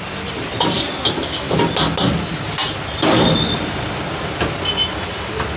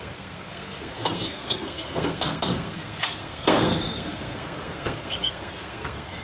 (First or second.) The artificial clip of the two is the second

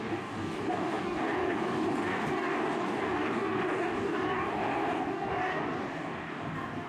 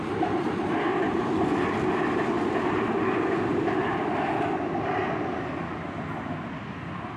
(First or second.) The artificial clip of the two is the first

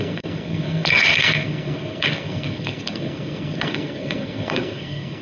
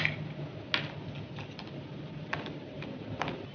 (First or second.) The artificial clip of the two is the first